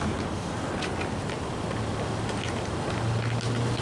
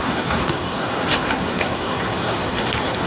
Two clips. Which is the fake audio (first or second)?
second